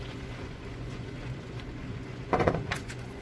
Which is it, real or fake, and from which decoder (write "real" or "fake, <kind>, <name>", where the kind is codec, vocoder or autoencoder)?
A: fake, vocoder, Vocos